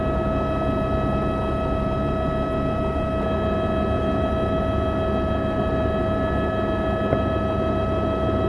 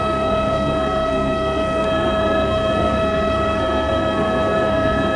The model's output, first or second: second